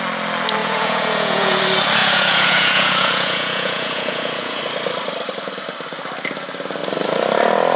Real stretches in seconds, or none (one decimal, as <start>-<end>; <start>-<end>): 0.0-0.6; 1.6-2.0; 4.6-7.8

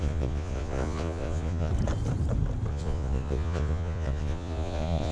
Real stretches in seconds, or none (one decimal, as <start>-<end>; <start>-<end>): 1.7-2.7

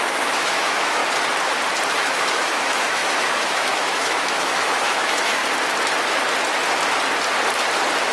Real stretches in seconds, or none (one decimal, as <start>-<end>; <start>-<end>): 1.0-1.9; 5.4-8.1

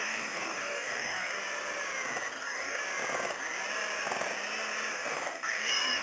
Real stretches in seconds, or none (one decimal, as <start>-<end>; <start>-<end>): 1.4-2.4; 2.8-4.9

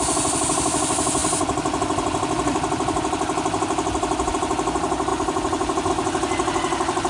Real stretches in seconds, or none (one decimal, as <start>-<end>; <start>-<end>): 0.0-7.1

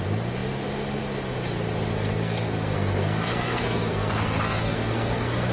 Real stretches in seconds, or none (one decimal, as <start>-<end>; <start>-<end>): 0.0-1.9

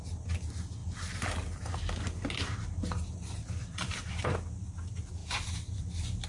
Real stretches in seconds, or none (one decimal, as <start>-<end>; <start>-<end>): 0.0-0.8; 4.1-5.2; 5.8-6.3

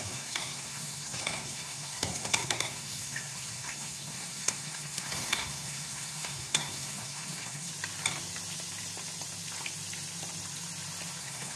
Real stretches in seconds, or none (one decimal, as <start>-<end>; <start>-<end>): 7.7-11.2